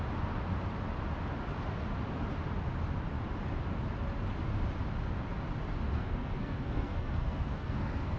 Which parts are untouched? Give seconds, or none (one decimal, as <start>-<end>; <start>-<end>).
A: 0.0-5.9